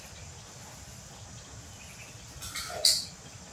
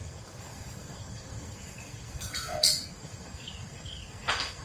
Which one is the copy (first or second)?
second